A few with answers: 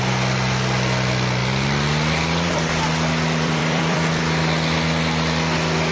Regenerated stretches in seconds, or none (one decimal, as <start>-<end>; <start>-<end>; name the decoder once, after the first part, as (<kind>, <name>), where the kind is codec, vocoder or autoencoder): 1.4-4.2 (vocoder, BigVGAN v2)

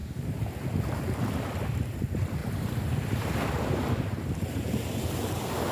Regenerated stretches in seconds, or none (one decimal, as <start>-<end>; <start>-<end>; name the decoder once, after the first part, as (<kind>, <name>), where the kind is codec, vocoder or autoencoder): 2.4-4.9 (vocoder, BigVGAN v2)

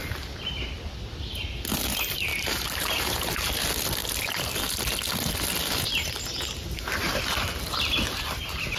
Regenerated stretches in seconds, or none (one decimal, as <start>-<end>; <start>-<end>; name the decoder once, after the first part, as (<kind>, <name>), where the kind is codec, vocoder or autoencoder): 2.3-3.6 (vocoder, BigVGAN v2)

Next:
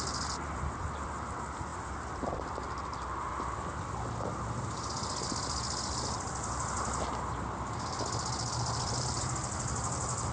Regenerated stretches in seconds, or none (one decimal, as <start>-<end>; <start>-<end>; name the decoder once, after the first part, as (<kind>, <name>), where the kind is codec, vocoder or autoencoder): 0.0-10.3 (vocoder, BigVGAN v2)

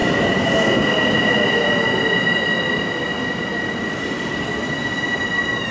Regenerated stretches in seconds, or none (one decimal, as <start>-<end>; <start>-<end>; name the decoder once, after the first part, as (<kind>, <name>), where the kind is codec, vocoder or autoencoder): none

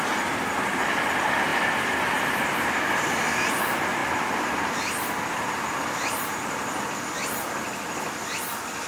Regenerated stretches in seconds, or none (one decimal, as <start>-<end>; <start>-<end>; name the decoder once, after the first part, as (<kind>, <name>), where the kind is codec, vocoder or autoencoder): 0.0-4.0 (vocoder, BigVGAN v2)

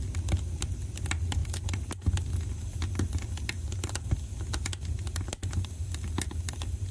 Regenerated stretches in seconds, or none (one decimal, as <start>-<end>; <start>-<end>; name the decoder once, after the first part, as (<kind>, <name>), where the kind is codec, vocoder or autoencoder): none